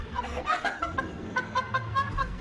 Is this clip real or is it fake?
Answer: fake